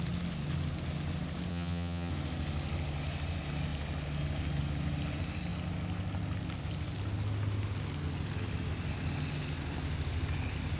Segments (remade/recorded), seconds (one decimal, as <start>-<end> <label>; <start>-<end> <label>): 0.0-1.5 recorded; 1.5-2.1 remade; 2.1-10.8 recorded